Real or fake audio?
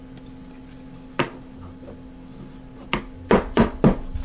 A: real